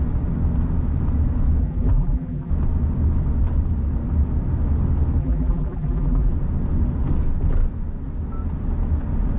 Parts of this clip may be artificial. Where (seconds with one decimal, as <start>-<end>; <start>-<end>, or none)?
1.6-2.5; 5.2-6.3